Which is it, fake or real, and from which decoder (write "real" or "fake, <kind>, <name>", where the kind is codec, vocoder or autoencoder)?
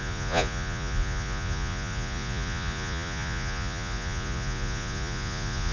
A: fake, vocoder, Vocos